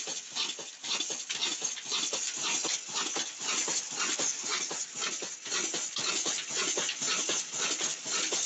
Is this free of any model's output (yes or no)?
yes